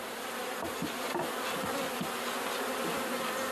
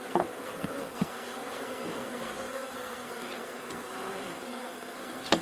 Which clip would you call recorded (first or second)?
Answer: first